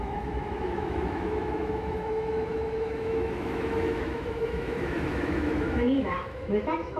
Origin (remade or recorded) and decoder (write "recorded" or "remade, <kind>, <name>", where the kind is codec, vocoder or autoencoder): remade, autoencoder, DAC-VAE